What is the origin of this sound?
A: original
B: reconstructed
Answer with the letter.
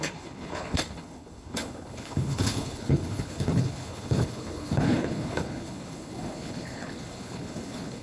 B